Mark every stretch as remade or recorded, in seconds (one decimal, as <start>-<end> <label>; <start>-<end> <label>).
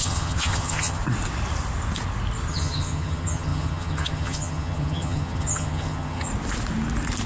0.0-1.0 remade; 1.0-2.5 recorded; 2.5-6.3 remade; 6.3-7.3 recorded